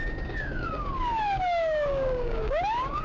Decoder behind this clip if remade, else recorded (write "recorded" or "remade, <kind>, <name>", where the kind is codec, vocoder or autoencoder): remade, codec, DAC